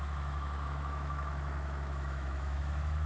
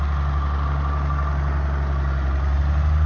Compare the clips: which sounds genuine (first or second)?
second